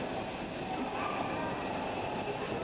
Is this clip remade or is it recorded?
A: recorded